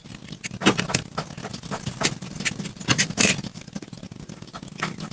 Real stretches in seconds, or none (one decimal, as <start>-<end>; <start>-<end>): 0.0-5.1